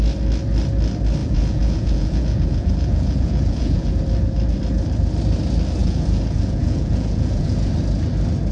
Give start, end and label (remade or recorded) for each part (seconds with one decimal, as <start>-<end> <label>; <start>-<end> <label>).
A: 0.0-1.2 recorded; 1.2-3.9 remade; 3.9-5.8 recorded; 5.8-7.7 remade; 7.7-8.5 recorded